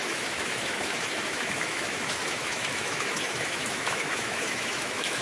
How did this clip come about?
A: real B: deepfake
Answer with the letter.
B